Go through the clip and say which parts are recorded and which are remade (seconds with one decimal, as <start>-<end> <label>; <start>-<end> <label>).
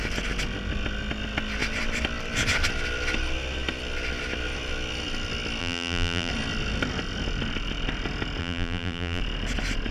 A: 0.0-5.6 recorded; 5.6-6.3 remade; 6.3-8.4 recorded; 8.4-9.2 remade; 9.2-9.9 recorded